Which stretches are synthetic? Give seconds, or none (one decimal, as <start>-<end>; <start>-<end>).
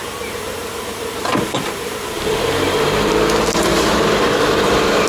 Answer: 0.0-3.1